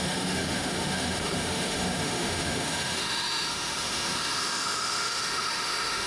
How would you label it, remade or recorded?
remade